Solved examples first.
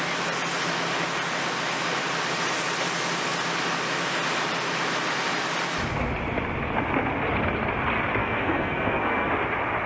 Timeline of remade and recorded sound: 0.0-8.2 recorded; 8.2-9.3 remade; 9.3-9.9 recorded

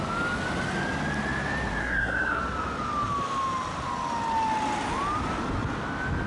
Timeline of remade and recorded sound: 0.0-1.8 recorded; 1.8-2.4 remade; 2.4-6.3 recorded